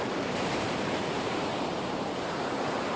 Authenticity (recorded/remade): remade